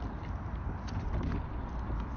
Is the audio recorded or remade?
recorded